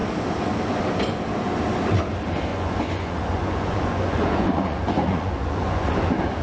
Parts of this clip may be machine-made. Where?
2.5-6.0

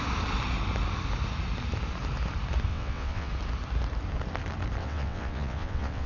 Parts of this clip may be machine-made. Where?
2.7-3.3; 4.8-6.1

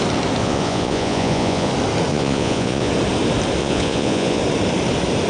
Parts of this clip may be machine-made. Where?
0.4-1.7; 2.1-2.9; 3.6-4.4

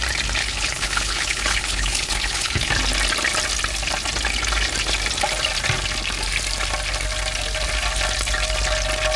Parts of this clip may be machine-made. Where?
0.4-2.7